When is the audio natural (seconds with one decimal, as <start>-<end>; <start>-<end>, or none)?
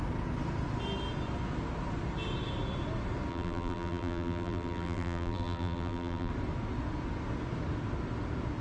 0.0-3.3; 6.3-8.6